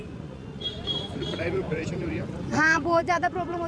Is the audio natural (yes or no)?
no